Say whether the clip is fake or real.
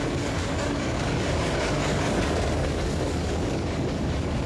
fake